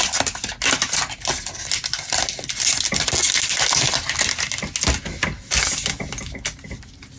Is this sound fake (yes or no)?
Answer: no